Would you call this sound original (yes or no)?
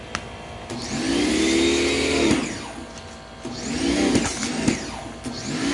yes